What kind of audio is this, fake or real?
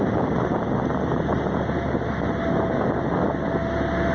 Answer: real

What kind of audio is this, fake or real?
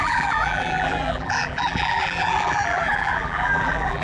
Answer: fake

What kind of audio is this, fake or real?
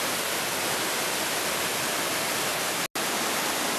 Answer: real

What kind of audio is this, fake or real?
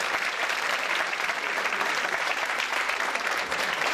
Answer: fake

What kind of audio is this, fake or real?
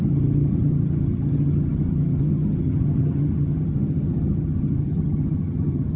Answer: fake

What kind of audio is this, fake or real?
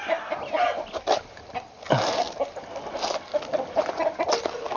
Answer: real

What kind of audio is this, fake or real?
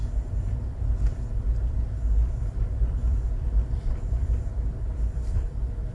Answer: fake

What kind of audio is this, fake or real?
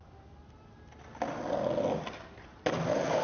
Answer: real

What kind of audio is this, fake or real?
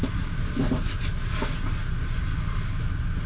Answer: real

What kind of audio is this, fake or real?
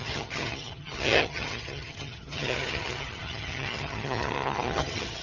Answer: fake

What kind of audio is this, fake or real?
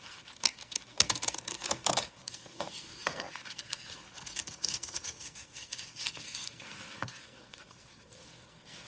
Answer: fake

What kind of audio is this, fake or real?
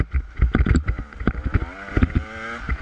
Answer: real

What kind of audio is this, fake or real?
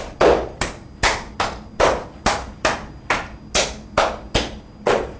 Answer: real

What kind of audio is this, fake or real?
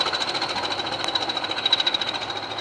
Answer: real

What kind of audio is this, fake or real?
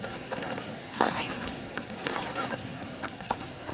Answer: fake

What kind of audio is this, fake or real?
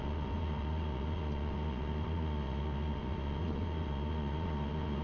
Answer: fake